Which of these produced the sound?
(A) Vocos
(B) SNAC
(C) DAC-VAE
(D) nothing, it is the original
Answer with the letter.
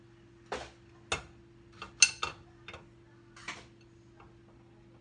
D